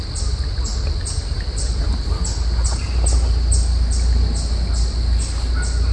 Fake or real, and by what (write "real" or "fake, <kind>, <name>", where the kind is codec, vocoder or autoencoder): real